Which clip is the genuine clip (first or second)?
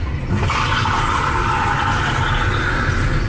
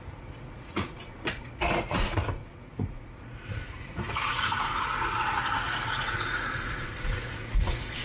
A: first